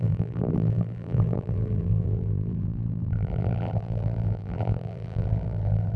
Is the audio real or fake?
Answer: fake